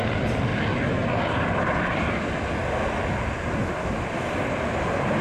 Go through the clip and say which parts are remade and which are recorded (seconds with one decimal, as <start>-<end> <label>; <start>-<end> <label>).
0.0-0.5 remade; 0.5-3.6 recorded; 3.6-5.2 remade